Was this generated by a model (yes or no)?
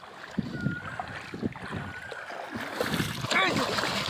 no